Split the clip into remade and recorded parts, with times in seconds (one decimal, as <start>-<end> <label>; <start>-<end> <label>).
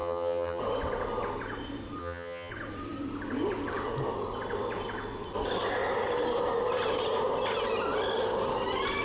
0.0-0.6 remade; 0.6-2.0 recorded; 2.0-2.5 remade; 2.5-9.0 recorded